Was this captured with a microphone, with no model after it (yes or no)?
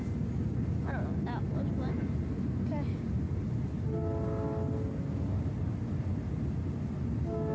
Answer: yes